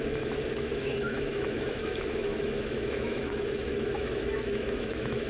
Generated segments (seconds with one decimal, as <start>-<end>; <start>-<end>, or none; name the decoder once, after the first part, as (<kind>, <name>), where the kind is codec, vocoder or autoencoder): 0.0-5.3 (autoencoder, DAC-VAE)